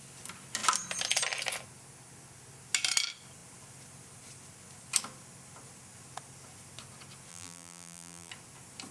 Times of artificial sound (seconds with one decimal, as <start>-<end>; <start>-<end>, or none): 7.3-8.3